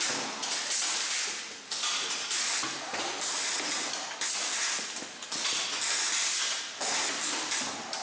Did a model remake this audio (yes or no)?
no